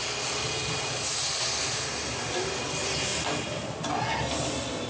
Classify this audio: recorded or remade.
recorded